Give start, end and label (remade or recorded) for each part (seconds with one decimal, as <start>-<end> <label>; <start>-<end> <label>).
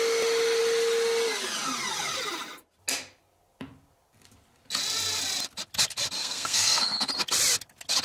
0.0-6.2 recorded; 6.2-7.1 remade; 7.1-8.0 recorded